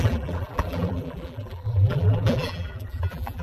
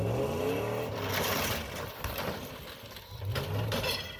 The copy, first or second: first